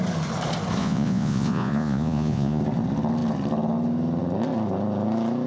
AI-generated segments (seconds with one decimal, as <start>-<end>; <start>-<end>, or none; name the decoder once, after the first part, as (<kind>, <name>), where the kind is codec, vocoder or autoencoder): 0.8-2.6 (vocoder, Vocos)